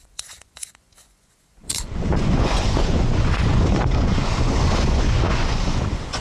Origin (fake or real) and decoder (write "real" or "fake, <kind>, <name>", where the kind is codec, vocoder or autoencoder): fake, vocoder, Vocos